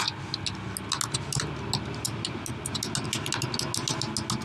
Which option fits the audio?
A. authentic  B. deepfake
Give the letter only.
A